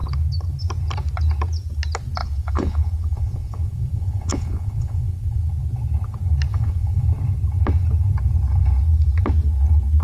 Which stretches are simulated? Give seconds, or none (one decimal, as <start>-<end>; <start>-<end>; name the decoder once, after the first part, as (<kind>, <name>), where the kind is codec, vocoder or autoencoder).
2.2-5.5 (vocoder, Vocos); 6.5-7.1